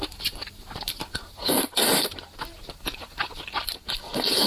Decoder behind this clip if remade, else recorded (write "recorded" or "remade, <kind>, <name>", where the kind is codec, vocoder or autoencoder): remade, vocoder, BigVGAN v2